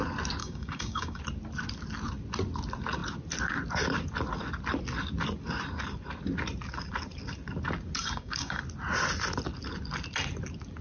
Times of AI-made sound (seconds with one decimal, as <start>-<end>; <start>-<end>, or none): 0.4-1.2; 8.0-8.6